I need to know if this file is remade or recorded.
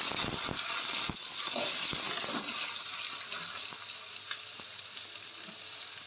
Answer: recorded